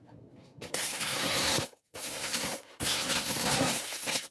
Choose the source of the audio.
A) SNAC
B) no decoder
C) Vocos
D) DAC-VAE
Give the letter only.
A